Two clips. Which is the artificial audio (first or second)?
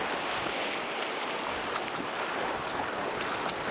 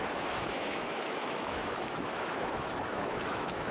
second